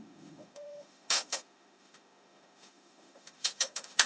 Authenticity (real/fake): fake